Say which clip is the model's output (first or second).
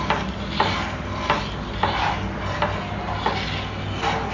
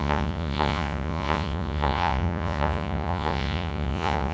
second